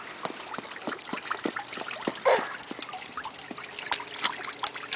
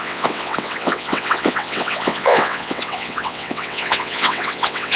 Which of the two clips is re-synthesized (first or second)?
second